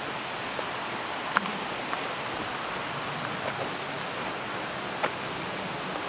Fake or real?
real